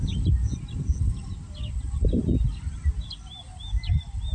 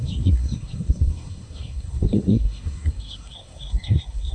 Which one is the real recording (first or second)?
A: first